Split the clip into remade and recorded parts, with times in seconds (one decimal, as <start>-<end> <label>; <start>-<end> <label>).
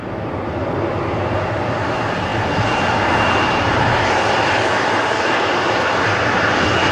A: 0.0-6.9 recorded